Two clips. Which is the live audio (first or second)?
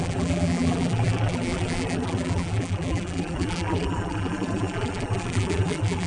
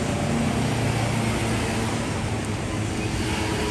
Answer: second